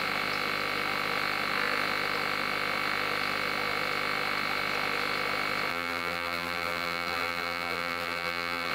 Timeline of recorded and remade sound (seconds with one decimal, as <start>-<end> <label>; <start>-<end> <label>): 0.0-5.7 recorded; 5.7-8.7 remade